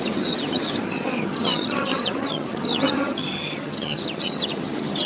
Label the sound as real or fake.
fake